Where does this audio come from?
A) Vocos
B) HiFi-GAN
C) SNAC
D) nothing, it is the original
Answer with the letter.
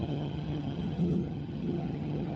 B